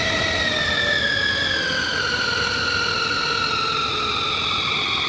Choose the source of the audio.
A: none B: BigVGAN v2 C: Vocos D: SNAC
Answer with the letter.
A